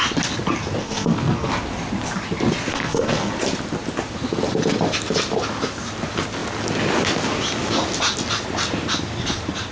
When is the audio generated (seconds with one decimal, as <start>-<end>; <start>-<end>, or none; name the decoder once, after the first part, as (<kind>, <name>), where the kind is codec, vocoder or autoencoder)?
0.8-1.5 (codec, SNAC); 2.7-3.3